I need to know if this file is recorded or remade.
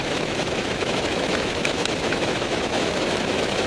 remade